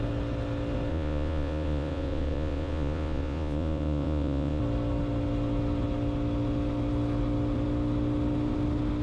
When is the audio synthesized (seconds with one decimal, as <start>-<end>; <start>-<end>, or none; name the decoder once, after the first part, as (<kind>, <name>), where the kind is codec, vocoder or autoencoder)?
0.9-4.6 (vocoder, Vocos)